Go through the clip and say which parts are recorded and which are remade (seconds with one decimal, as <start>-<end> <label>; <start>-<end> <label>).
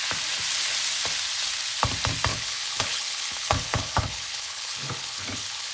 0.0-2.3 recorded; 2.3-5.7 remade